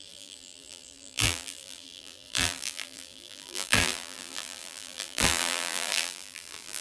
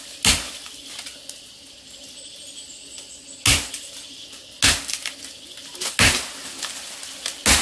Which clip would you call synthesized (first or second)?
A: first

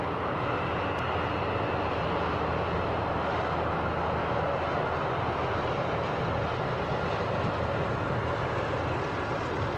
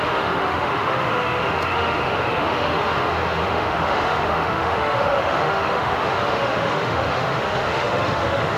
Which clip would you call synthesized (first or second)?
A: second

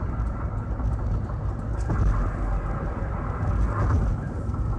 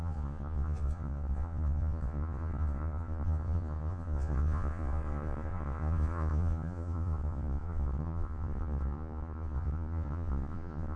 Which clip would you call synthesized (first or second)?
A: second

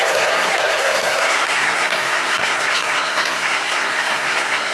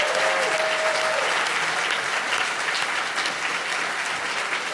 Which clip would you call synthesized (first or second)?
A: first